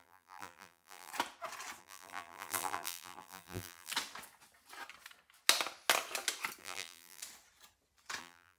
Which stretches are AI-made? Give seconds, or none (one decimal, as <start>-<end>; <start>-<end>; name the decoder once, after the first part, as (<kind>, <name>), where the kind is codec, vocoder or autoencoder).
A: 0.0-1.1 (vocoder, BigVGAN v2); 1.8-3.9; 6.6-7.2; 8.2-8.6